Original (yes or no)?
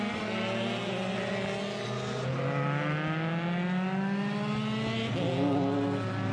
yes